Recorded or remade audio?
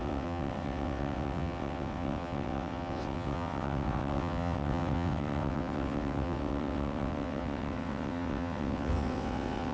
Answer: remade